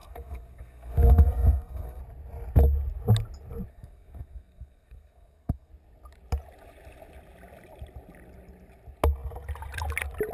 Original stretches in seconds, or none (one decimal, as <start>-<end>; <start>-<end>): 2.0-3.7; 5.7-10.3